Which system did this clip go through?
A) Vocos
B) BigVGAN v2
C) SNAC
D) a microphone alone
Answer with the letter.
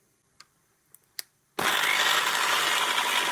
D